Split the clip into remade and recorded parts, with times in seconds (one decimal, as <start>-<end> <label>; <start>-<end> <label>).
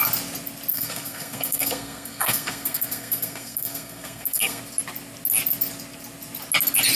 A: 0.0-0.7 recorded; 0.7-4.6 remade; 4.6-7.0 recorded